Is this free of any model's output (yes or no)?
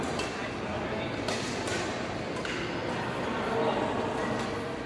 yes